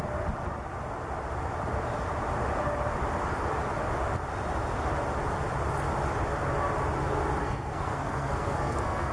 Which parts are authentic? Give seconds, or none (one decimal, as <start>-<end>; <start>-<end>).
0.0-7.4